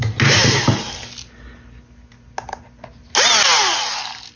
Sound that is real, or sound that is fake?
real